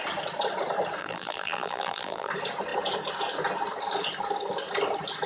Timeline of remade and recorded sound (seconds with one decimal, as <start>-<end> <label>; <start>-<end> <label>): 0.0-1.0 recorded; 1.0-2.3 remade; 2.3-5.3 recorded